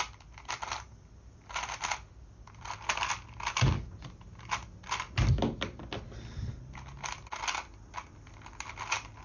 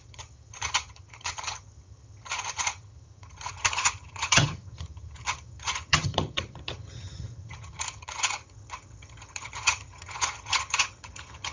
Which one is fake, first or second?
second